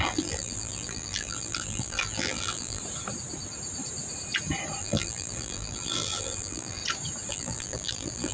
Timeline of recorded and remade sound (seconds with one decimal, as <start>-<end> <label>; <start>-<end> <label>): 0.0-2.8 remade; 2.8-4.8 recorded; 4.8-6.8 remade; 6.8-7.3 recorded; 7.3-8.3 remade